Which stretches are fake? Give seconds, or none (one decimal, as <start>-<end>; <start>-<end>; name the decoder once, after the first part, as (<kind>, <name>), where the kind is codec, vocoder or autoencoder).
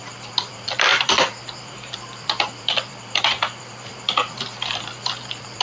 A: 0.0-5.6 (vocoder, BigVGAN v2)